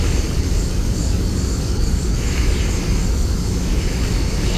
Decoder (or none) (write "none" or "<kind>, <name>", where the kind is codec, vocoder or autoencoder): codec, DAC